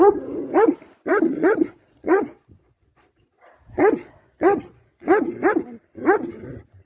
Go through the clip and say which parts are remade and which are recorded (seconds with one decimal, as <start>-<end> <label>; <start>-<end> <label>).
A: 0.0-1.1 recorded; 1.1-5.2 remade; 5.2-6.9 recorded